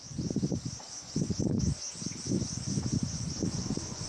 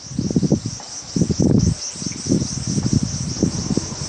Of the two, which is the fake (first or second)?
first